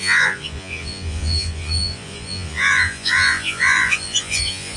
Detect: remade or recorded remade